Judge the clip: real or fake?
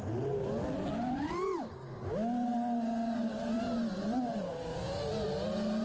real